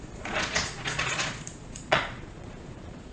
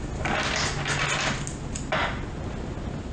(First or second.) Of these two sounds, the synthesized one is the first